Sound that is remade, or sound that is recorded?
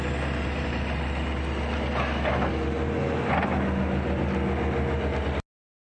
recorded